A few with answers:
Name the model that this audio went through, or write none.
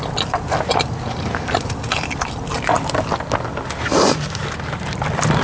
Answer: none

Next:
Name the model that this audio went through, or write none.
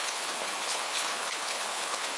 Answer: codec, HILCodec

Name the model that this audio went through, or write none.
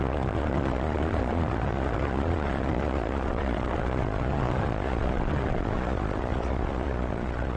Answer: vocoder, Vocos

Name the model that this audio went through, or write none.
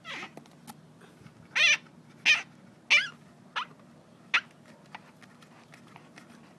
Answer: none